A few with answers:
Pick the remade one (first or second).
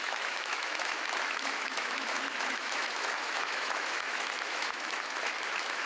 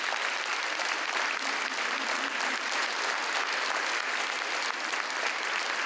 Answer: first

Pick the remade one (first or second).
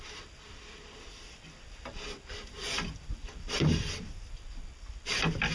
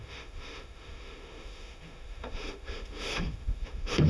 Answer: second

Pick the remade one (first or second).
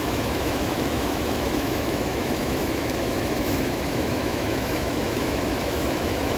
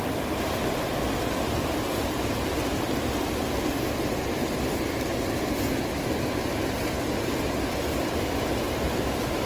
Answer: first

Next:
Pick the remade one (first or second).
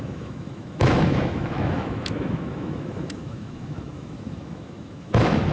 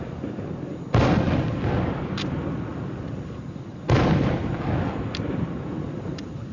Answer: first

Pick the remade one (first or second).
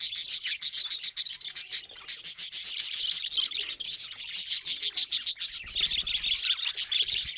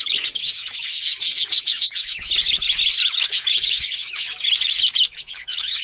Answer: second